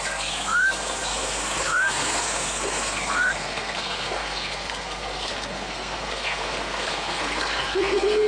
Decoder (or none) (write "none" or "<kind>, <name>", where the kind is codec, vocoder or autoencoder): codec, SNAC